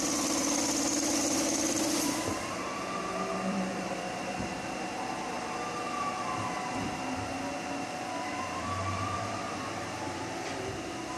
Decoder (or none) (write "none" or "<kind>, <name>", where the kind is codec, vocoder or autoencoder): vocoder, BigVGAN v2